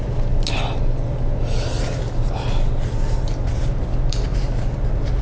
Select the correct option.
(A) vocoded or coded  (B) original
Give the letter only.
B